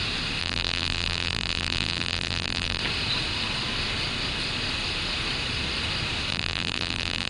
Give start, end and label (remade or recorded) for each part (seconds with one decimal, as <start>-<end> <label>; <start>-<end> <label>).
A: 0.0-0.4 recorded; 0.4-2.8 remade; 2.8-6.3 recorded; 6.3-7.3 remade